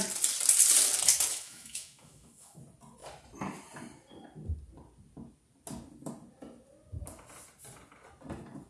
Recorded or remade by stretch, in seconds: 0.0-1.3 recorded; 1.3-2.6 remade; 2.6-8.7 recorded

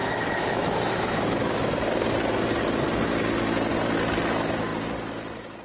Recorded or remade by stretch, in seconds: 0.0-1.8 remade; 1.8-5.6 recorded

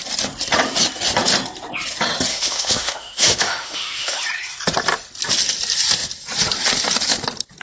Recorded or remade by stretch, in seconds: 0.0-2.3 recorded; 2.3-4.2 remade; 4.2-7.6 recorded

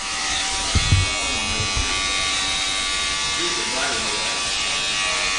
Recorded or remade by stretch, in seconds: 0.0-0.8 remade; 0.8-3.4 recorded; 3.4-4.1 remade; 4.1-5.4 recorded

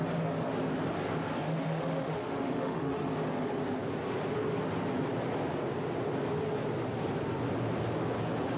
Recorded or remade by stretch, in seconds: 0.0-1.5 recorded; 1.5-3.1 remade; 3.1-8.6 recorded

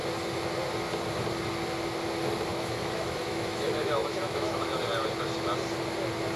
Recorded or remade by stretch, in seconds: 0.0-2.5 recorded; 2.5-4.7 remade; 4.7-6.4 recorded

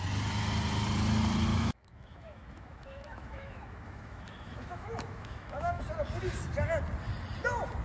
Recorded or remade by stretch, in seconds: 0.0-1.5 recorded; 1.5-5.8 remade; 5.8-7.8 recorded